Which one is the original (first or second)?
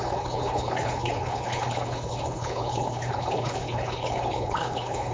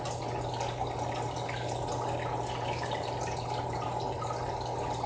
second